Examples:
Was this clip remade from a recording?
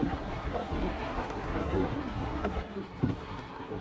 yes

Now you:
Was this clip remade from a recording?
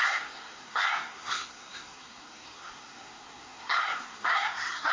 yes